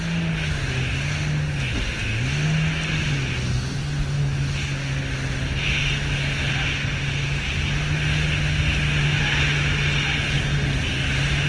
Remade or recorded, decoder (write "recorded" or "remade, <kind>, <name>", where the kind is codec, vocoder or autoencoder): recorded